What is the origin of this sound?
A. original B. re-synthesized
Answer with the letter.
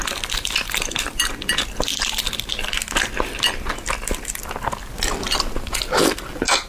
A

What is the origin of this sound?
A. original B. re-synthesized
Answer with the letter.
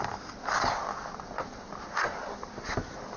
A